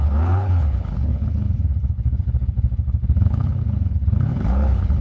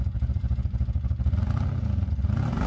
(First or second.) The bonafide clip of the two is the second